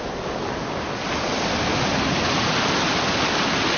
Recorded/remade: recorded